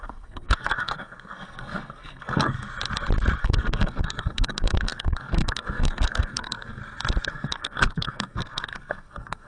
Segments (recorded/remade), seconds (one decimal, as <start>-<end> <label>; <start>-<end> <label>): 0.0-2.7 remade; 2.7-3.4 recorded; 3.4-6.8 remade; 6.8-7.3 recorded; 7.3-9.5 remade